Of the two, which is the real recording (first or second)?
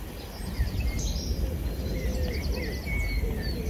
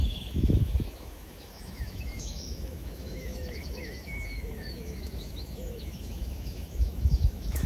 first